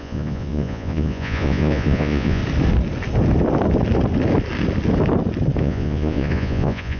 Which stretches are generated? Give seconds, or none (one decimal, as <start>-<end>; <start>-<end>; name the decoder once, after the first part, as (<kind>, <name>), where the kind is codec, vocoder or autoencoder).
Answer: 0.0-2.4 (vocoder, Vocos); 5.6-7.0

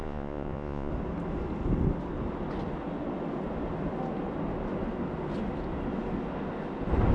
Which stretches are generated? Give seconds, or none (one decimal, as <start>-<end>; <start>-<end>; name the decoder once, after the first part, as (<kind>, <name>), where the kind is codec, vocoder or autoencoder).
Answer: 0.0-0.9 (vocoder, Vocos)

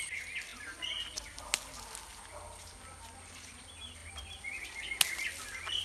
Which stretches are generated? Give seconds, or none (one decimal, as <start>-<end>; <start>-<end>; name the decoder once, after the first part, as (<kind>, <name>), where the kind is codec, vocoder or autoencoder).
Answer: none

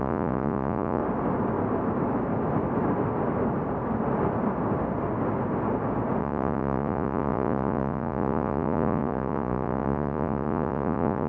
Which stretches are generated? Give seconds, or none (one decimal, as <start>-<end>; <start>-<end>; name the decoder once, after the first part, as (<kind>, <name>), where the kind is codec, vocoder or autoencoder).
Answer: 0.0-1.0 (vocoder, Vocos); 6.2-11.3